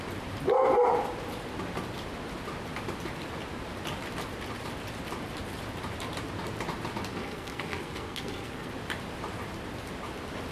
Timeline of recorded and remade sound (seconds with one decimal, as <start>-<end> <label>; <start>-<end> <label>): 0.0-7.1 recorded; 7.1-8.7 remade; 8.7-10.5 recorded